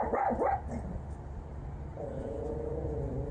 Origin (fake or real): real